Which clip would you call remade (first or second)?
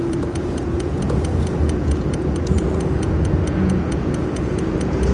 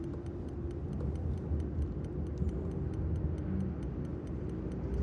first